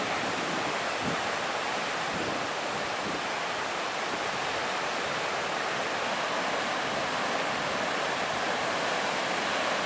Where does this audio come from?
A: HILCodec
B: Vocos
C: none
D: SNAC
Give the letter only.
C